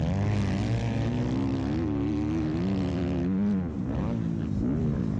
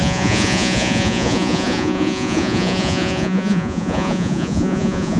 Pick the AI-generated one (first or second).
second